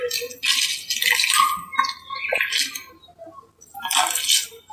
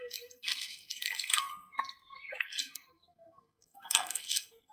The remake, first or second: second